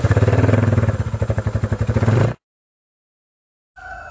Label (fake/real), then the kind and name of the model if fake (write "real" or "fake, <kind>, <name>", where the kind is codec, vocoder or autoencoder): real